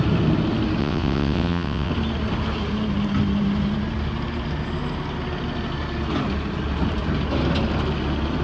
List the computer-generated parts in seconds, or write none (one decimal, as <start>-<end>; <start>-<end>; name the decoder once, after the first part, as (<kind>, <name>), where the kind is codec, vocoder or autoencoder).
0.8-1.9 (vocoder, WaveNeXt)